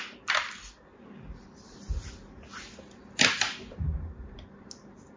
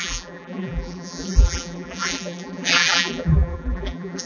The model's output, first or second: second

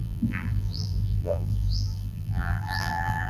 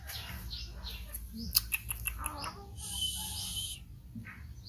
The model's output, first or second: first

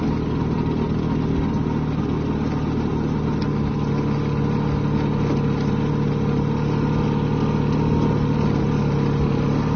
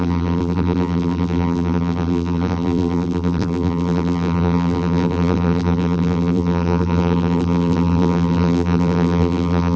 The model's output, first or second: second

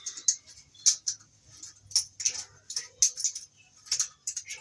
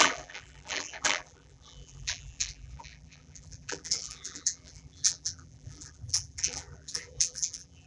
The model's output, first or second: second